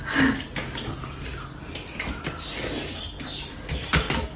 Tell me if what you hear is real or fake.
real